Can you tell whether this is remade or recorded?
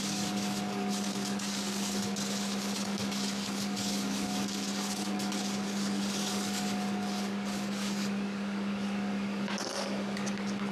remade